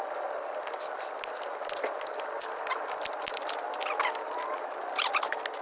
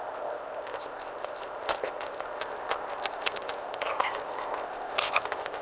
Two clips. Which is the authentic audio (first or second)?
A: first